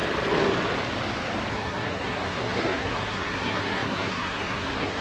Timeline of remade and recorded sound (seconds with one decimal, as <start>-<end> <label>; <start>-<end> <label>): 0.0-1.5 recorded; 1.5-5.0 remade